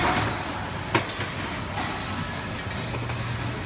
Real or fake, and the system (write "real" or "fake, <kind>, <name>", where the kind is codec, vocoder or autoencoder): real